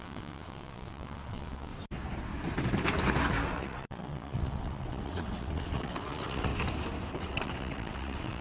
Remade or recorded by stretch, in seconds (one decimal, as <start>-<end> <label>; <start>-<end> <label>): 0.0-1.7 remade; 1.7-3.5 recorded; 3.5-6.5 remade; 6.5-7.1 recorded; 7.1-8.4 remade